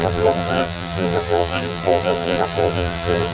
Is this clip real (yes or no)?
no